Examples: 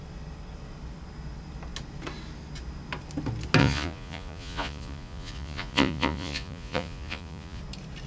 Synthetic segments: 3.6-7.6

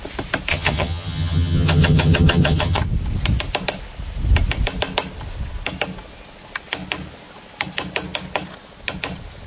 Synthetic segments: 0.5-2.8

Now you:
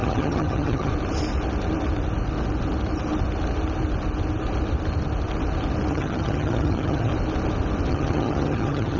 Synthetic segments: 0.0-0.9; 5.9-7.1; 7.9-9.0